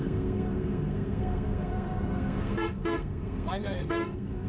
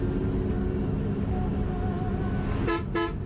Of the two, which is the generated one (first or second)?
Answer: first